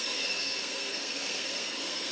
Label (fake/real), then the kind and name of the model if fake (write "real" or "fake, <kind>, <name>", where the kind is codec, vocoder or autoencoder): fake, codec, SNAC